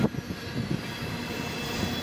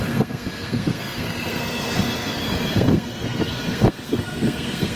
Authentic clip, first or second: first